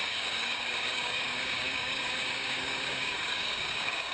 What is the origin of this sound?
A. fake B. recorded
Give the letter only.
A